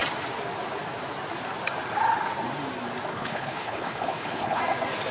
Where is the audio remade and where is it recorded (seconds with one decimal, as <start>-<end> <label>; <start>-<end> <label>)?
0.0-3.1 recorded; 3.1-4.6 remade; 4.6-5.1 recorded